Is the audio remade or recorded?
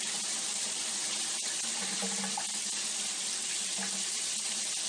recorded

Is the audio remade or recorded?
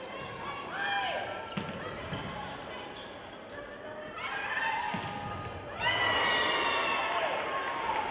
recorded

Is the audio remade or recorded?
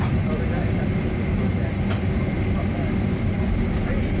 recorded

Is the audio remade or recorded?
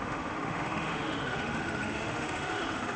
remade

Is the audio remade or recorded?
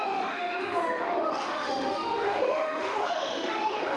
remade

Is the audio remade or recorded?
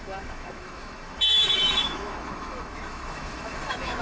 remade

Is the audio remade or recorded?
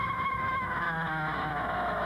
remade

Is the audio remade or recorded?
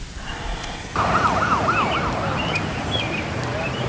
recorded